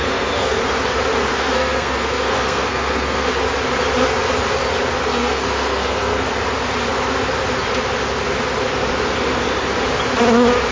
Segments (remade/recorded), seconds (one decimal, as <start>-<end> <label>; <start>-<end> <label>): 0.0-0.6 remade; 0.6-1.3 recorded; 1.3-3.3 remade; 3.3-5.0 recorded; 5.0-6.3 remade; 6.3-10.7 recorded